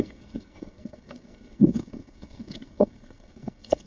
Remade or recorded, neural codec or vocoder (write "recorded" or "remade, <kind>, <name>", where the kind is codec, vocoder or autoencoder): remade, codec, SNAC